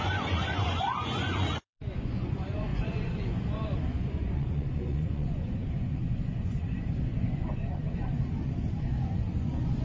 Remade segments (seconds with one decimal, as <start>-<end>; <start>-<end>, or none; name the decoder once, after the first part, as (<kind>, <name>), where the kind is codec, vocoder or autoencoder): 0.0-9.8 (vocoder, Vocos)